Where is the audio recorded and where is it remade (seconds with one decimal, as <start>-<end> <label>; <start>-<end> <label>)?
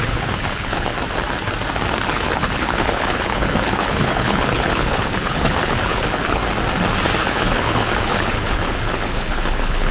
0.0-0.9 remade; 0.9-2.1 recorded; 2.1-6.4 remade; 6.4-7.2 recorded; 7.2-9.9 remade